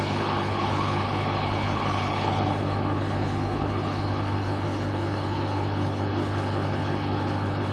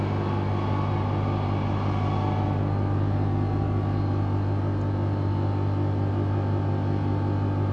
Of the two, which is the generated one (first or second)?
first